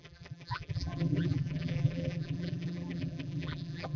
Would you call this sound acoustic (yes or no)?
no